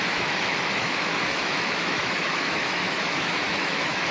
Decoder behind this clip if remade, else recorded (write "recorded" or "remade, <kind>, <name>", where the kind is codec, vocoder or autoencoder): remade, autoencoder, DAC-VAE